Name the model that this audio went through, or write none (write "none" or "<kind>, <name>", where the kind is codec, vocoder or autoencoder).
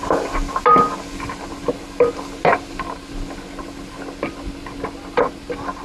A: none